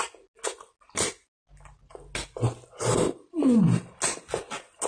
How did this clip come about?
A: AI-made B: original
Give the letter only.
B